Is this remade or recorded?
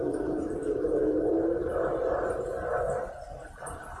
recorded